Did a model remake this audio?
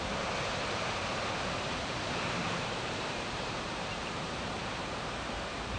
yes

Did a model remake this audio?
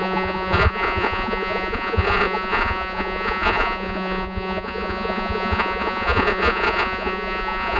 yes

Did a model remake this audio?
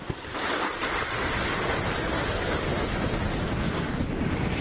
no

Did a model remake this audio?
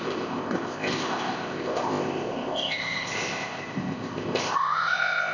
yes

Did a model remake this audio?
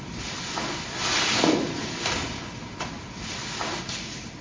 no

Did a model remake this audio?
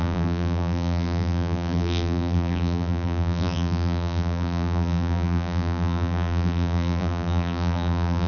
yes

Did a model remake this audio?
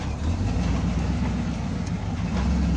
no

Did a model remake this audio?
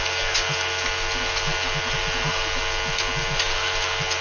no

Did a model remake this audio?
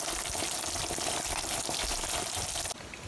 no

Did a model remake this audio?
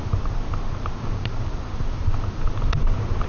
no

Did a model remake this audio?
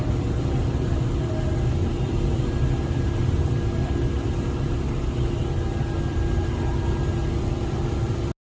no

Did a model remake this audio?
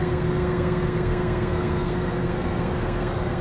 yes